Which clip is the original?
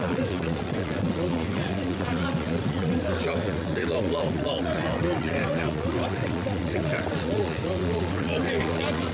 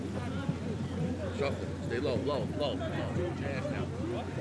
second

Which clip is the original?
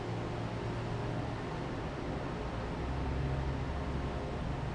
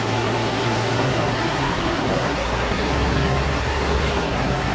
first